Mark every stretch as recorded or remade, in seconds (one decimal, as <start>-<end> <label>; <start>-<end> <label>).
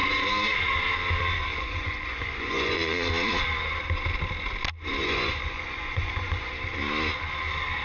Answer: 0.0-1.5 recorded; 1.5-3.1 remade; 3.1-5.0 recorded; 5.0-6.5 remade; 6.5-7.8 recorded